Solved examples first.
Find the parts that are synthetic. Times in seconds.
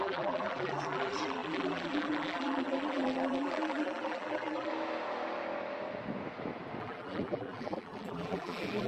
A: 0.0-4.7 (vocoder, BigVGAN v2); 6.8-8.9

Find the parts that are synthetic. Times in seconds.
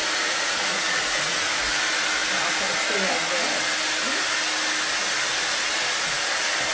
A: 0.0-1.8 (vocoder, Vocos)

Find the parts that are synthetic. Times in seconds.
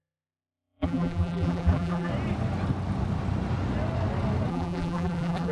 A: 0.0-2.1 (vocoder, BigVGAN v2); 4.5-5.5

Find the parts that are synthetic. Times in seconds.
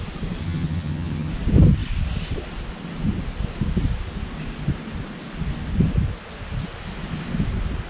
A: 0.4-1.3 (vocoder, HiFi-GAN)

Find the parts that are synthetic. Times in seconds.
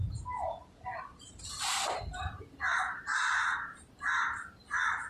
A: 0.0-3.1 (vocoder, BigVGAN v2); 4.0-5.1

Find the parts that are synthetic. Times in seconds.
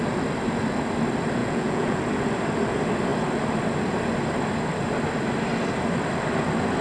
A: 1.4-2.0 (vocoder, Vocos)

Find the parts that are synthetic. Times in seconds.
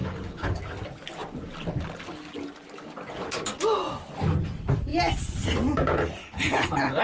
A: 0.0-0.6 (codec, HILCodec); 6.2-7.0